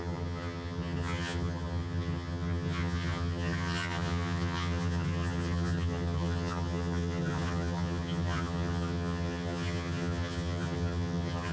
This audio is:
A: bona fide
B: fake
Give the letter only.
B